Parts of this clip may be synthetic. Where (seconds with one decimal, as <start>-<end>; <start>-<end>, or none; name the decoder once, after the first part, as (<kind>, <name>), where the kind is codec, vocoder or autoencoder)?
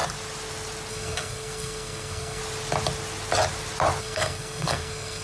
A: 0.9-2.4 (codec, SNAC); 4.0-5.2